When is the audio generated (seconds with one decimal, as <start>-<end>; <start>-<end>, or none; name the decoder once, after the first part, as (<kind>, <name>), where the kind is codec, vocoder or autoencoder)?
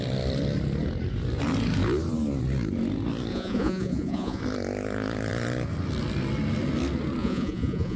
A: 3.3-4.4 (vocoder, Vocos); 7.2-8.0